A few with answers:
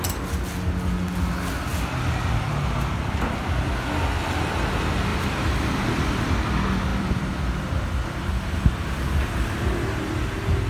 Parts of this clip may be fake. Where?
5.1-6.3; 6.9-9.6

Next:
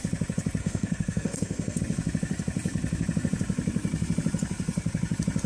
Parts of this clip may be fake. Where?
0.6-1.8